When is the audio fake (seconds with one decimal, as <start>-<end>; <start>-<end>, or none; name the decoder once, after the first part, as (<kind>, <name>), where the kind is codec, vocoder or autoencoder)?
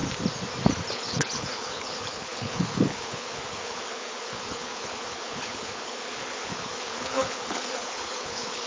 0.9-8.7 (codec, HILCodec)